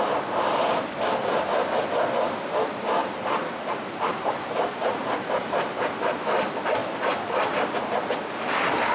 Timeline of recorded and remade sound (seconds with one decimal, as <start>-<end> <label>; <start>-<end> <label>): 0.0-3.0 recorded; 3.0-6.3 remade; 6.3-6.8 recorded; 6.8-7.7 remade; 7.7-8.9 recorded